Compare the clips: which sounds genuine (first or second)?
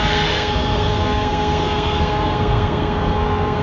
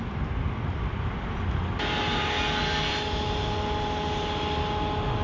second